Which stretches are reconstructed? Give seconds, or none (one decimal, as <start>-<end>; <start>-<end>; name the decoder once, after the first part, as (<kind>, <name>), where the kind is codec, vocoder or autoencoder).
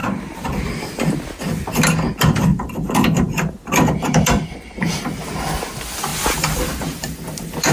0.0-0.7 (vocoder, BigVGAN v2); 2.5-4.3; 6.1-7.1